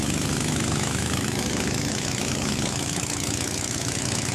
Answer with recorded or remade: remade